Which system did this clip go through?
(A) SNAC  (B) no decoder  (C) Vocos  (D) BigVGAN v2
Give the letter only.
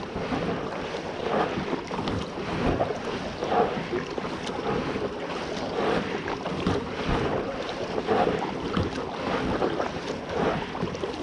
B